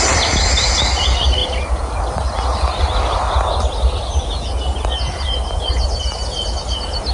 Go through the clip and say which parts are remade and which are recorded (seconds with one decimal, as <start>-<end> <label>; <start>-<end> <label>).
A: 0.0-7.1 recorded